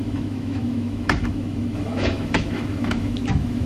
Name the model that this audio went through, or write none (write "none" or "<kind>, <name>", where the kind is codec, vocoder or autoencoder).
autoencoder, DAC-VAE